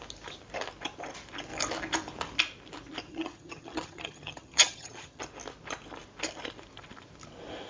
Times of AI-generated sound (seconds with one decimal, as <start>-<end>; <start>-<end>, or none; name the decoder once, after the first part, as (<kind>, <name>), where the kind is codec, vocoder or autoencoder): 3.1-5.2 (vocoder, HiFi-GAN)